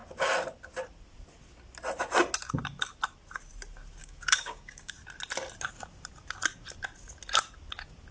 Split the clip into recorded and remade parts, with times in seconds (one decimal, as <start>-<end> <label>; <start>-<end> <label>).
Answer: 0.0-4.0 recorded; 4.0-4.9 remade; 4.9-8.1 recorded